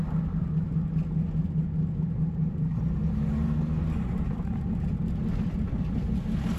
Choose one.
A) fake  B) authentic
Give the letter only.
B